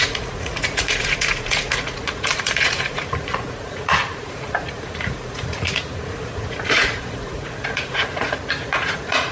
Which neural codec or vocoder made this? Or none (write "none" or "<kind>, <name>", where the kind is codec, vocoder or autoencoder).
vocoder, Vocos